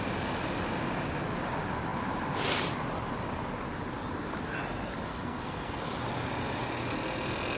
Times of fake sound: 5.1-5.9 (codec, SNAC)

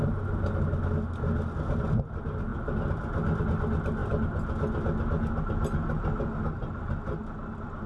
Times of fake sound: none

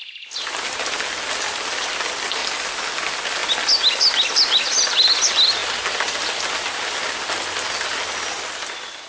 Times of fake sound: none

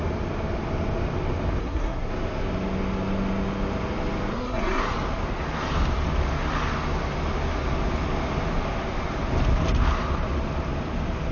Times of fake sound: 1.6-2.1 (codec, SNAC); 4.3-4.8

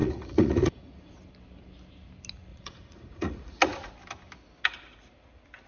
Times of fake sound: 0.0-1.1 (vocoder, Vocos); 2.5-3.9